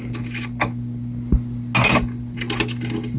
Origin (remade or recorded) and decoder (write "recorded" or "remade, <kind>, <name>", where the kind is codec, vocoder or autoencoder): recorded